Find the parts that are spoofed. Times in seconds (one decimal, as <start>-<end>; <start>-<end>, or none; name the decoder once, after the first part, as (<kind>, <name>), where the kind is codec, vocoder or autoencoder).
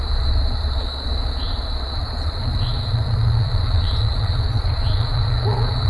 0.0-5.9 (vocoder, Vocos)